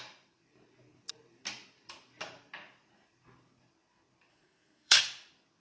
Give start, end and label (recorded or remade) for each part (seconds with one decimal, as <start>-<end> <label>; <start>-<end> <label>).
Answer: 0.0-4.3 recorded; 4.3-5.0 remade; 5.0-5.6 recorded